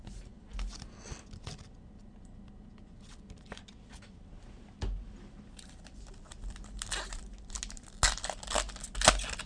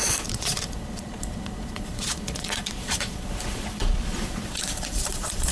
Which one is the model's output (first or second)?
second